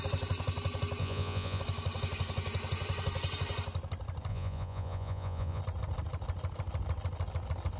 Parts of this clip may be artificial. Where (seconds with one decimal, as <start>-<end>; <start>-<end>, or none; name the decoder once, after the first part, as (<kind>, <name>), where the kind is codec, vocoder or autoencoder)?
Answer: 1.0-1.6 (vocoder, Vocos); 4.3-5.6